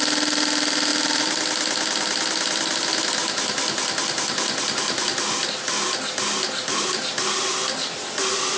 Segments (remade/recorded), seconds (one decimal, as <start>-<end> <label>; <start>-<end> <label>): 0.0-8.6 recorded